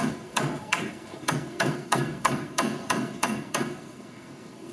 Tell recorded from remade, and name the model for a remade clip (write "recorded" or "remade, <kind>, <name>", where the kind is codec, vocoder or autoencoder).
remade, codec, SNAC